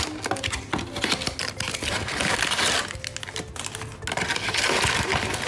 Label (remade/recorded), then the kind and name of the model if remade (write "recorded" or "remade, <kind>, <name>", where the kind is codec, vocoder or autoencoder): recorded